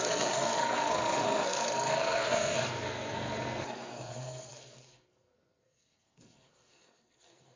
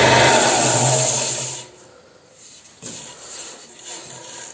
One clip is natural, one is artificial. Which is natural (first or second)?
second